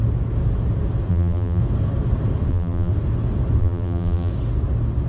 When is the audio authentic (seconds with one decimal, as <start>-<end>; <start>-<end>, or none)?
0.0-1.1; 1.6-2.5; 2.9-3.6; 4.3-5.1